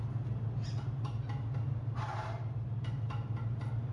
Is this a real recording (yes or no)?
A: yes